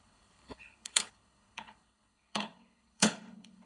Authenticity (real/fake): fake